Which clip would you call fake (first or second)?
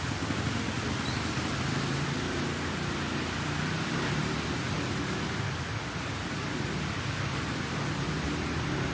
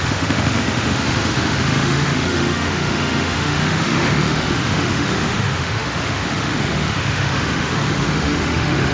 second